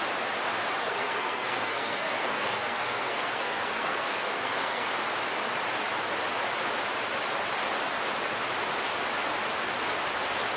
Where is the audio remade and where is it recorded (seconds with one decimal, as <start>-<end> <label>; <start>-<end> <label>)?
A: 0.0-0.8 recorded; 0.8-4.9 remade; 4.9-10.6 recorded